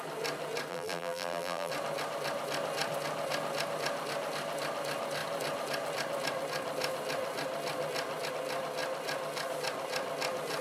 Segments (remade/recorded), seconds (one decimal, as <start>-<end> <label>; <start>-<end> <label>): 0.0-0.7 recorded; 0.7-1.7 remade; 1.7-10.6 recorded